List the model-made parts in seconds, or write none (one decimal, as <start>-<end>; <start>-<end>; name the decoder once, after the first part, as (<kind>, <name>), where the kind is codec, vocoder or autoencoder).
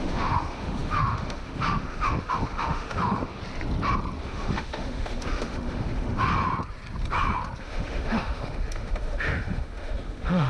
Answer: 0.0-3.4 (autoencoder, DAC-VAE); 4.2-6.3; 7.6-10.5